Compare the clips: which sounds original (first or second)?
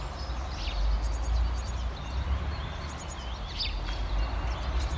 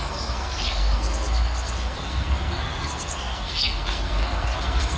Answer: first